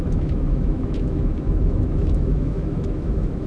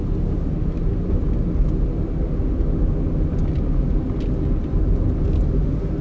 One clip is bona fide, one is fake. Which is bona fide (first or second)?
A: second